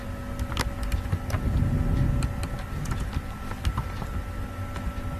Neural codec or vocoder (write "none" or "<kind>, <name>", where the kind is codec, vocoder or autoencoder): none